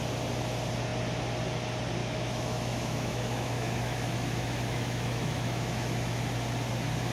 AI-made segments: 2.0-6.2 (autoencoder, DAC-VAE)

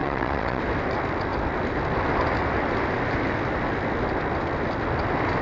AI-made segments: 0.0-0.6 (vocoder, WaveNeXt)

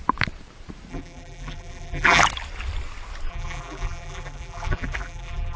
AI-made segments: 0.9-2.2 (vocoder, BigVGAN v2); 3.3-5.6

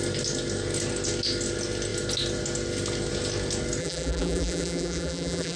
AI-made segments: 3.8-5.6 (vocoder, BigVGAN v2)